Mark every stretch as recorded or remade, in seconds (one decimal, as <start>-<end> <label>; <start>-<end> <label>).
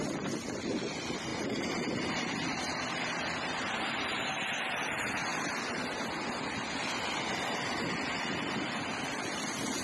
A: 0.0-9.8 recorded